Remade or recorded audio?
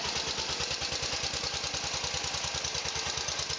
recorded